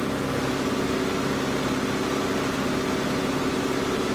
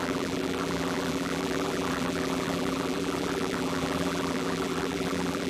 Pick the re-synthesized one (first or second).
second